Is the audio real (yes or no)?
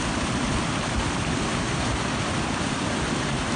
yes